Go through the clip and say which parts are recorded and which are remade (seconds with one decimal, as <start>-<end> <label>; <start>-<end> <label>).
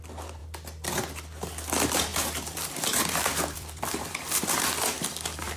0.0-2.1 recorded; 2.1-5.6 remade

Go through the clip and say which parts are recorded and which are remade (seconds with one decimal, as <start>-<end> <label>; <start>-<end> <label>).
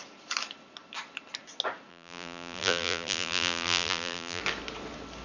0.0-1.9 recorded; 1.9-4.4 remade; 4.4-5.2 recorded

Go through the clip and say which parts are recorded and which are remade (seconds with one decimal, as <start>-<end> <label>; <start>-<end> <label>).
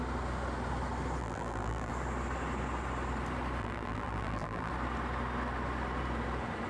0.0-1.2 recorded; 1.2-1.9 remade; 1.9-3.6 recorded; 3.6-4.7 remade; 4.7-6.7 recorded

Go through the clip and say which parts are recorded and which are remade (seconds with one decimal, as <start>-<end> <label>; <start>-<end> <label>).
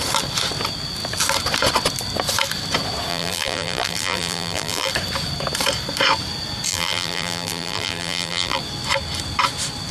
0.0-3.1 recorded; 3.1-4.9 remade; 4.9-6.7 recorded; 6.7-8.6 remade; 8.6-9.9 recorded